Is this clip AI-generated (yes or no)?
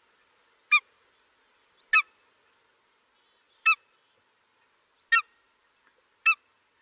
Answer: no